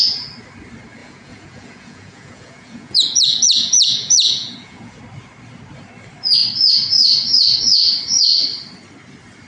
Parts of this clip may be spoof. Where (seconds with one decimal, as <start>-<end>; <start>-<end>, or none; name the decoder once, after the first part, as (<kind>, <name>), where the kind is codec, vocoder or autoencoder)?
1.0-5.0 (vocoder, Vocos)